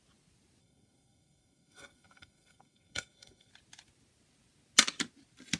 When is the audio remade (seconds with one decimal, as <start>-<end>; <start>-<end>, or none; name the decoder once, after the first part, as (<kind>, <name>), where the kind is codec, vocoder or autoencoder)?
0.6-3.5 (codec, SNAC)